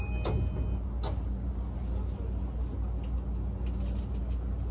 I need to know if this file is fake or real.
real